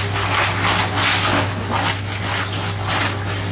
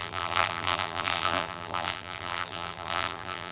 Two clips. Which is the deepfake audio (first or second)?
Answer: second